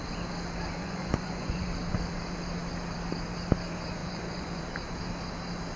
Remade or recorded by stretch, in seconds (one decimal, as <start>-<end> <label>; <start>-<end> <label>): 0.0-0.8 recorded; 0.8-1.7 remade; 1.7-4.0 recorded; 4.0-4.6 remade; 4.6-5.8 recorded